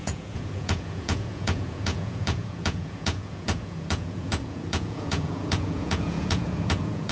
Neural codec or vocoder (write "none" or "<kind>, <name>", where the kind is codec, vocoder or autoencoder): vocoder, Vocos